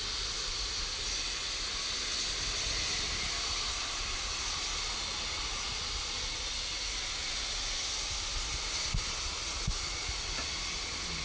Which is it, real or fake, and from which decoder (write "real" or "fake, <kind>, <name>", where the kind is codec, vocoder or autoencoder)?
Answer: real